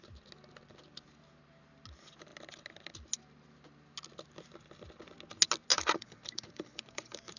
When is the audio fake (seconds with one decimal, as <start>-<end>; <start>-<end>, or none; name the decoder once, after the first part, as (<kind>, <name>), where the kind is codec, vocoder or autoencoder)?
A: 5.7-7.4 (vocoder, BigVGAN v2)